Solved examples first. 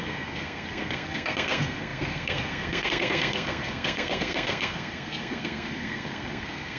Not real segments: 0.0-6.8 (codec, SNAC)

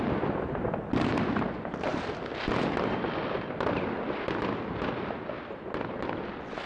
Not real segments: none

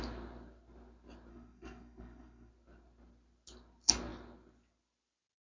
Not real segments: 1.3-2.5 (codec, SNAC)

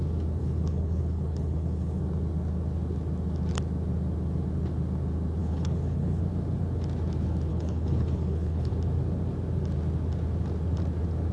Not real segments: 0.4-2.0 (codec, HILCodec); 5.4-6.2; 7.5-8.7

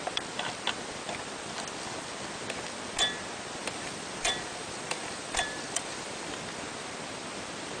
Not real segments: 3.6-6.2 (vocoder, BigVGAN v2)

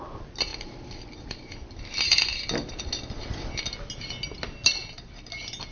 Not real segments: none